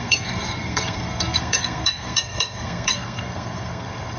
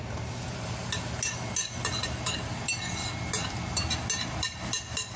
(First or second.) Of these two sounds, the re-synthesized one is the first